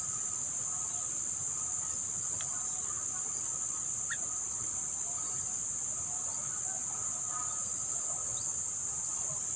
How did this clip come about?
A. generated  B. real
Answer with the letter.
B